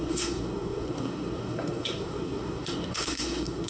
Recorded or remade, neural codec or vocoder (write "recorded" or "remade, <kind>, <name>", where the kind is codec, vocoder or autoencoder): remade, codec, SNAC